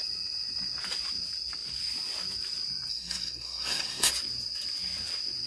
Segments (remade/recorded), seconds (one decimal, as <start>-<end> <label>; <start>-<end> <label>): 0.0-2.9 recorded; 2.9-4.1 remade; 4.1-5.5 recorded

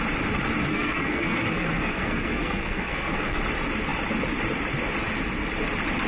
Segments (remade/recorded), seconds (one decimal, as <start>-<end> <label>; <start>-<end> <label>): 0.0-0.7 recorded; 0.7-3.4 remade; 3.4-6.1 recorded